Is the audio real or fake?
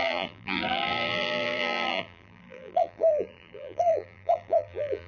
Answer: fake